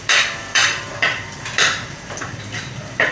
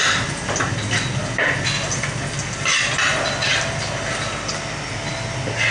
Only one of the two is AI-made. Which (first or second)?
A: first